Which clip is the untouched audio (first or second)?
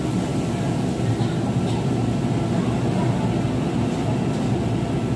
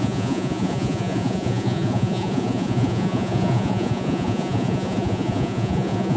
first